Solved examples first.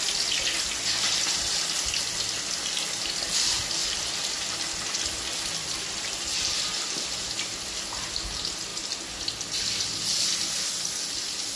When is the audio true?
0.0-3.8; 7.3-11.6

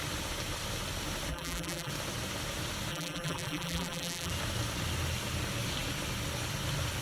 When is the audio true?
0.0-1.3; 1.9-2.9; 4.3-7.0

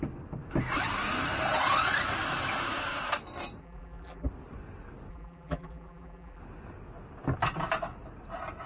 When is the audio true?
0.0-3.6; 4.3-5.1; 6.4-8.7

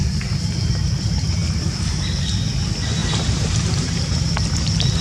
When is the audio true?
0.0-3.0; 4.4-5.0

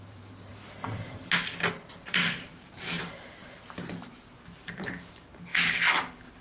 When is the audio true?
0.5-1.9; 5.5-6.4

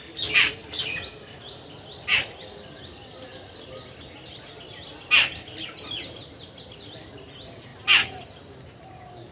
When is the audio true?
0.0-9.3